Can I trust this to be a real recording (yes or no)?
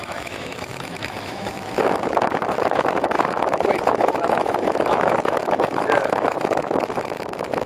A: no